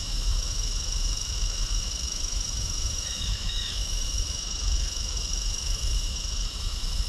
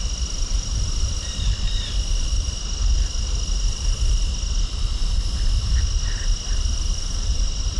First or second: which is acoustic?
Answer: second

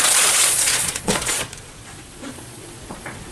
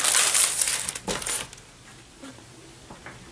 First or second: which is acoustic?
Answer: second